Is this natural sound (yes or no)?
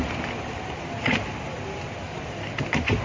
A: yes